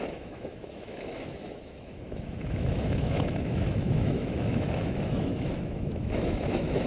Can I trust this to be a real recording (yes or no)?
no